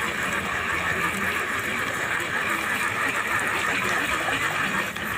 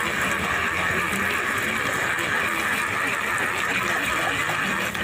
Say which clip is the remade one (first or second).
first